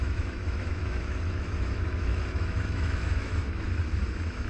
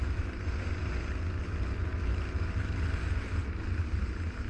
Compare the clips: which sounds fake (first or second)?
first